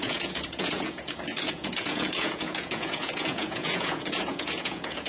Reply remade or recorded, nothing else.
remade